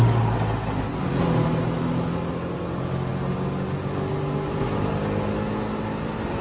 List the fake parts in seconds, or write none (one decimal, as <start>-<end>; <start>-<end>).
none